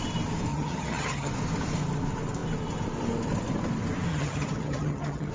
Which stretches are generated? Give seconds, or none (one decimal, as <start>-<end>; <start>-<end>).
0.5-1.3; 4.1-5.3